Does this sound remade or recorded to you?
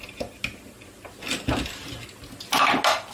recorded